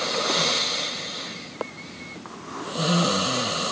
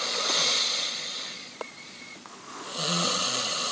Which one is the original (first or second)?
first